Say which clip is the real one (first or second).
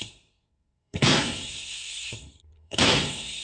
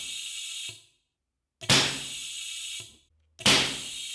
second